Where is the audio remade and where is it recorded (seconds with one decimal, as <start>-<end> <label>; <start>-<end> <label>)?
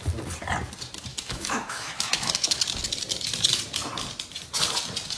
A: 0.0-1.1 recorded; 1.1-2.6 remade; 2.6-5.2 recorded